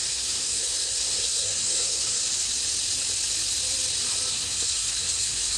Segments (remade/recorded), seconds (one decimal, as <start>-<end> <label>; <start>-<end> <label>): 0.0-2.2 remade; 2.2-4.3 recorded; 4.3-5.6 remade